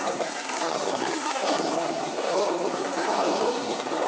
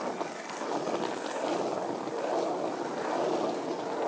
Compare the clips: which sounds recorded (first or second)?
second